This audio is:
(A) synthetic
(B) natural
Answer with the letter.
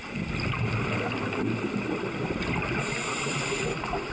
B